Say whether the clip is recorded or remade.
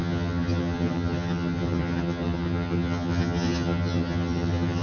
remade